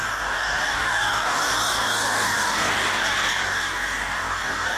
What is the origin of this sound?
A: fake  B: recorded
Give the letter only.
A